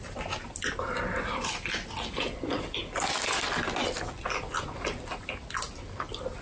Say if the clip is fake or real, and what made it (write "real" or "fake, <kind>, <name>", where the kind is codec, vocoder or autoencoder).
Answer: real